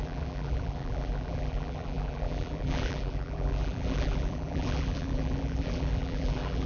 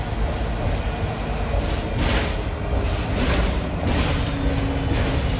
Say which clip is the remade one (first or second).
first